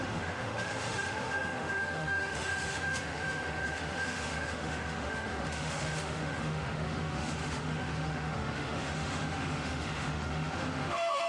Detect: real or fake fake